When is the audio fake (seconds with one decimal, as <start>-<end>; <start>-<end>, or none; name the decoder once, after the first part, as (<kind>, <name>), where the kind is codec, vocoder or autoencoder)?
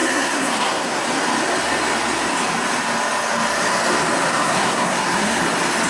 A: 0.0-1.0 (codec, SNAC); 4.3-5.4